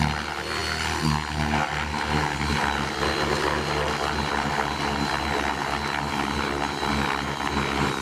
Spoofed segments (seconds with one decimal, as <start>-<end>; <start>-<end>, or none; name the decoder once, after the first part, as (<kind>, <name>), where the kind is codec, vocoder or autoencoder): none